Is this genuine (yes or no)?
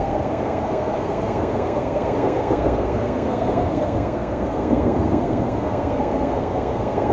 no